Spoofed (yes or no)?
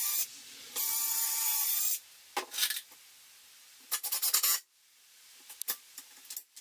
no